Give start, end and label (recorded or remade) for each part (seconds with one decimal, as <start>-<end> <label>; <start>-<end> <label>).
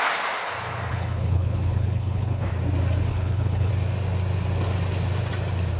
0.0-0.9 recorded; 0.9-2.5 remade; 2.5-3.1 recorded; 3.1-3.7 remade; 3.7-5.8 recorded